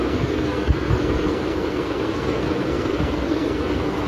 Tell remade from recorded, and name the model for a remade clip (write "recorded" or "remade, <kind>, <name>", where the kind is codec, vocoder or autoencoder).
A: remade, codec, SNAC